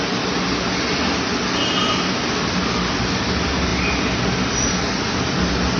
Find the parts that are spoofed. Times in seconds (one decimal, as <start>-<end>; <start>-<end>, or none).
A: 1.8-2.6; 3.7-4.7